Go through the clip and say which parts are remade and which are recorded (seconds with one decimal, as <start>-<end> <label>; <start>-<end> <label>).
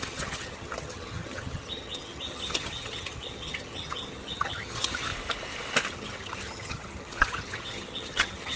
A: 0.0-5.1 remade; 5.1-5.9 recorded; 5.9-8.6 remade